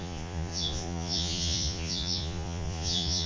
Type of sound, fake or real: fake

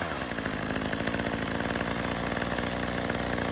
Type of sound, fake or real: real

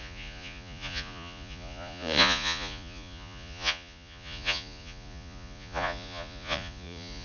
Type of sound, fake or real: fake